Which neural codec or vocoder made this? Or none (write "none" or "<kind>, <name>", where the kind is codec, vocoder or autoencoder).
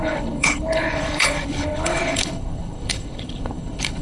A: codec, HILCodec